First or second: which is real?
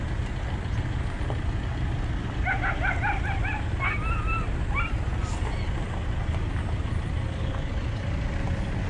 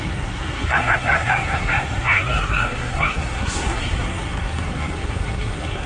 first